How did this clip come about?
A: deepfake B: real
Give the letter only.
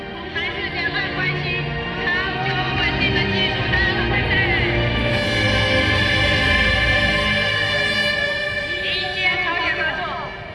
B